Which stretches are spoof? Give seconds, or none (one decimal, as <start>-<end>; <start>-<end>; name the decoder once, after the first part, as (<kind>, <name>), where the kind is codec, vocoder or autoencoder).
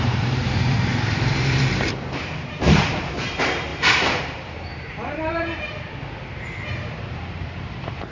0.0-5.5 (vocoder, BigVGAN v2); 7.0-8.1